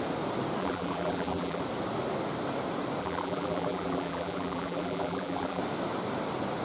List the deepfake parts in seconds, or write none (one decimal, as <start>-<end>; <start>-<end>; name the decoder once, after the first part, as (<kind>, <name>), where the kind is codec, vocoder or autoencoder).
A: 0.6-1.6 (vocoder, BigVGAN v2); 3.0-5.6